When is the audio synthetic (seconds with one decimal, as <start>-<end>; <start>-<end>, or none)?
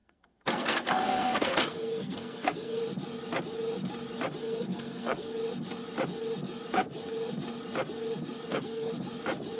0.0-2.8; 4.4-5.3; 8.5-8.9